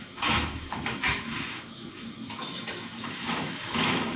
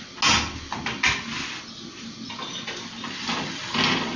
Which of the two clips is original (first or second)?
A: second